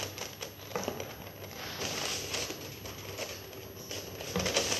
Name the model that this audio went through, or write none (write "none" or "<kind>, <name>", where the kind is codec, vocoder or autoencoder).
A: none